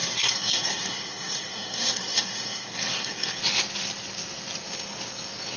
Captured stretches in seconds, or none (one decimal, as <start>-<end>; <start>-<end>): 3.4-5.6